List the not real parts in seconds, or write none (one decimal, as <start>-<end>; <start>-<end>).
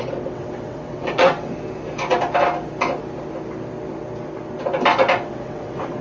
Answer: 0.0-1.5; 5.1-6.0